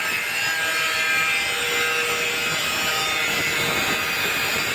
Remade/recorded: recorded